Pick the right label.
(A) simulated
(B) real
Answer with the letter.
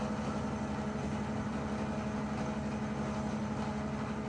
B